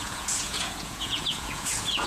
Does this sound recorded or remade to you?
remade